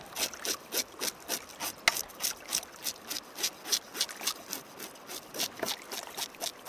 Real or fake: real